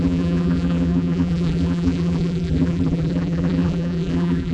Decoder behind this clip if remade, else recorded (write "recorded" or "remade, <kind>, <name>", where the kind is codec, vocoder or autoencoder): remade, vocoder, BigVGAN v2